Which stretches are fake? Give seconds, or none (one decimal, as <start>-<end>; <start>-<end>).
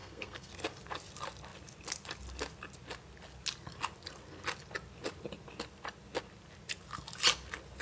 0.0-0.5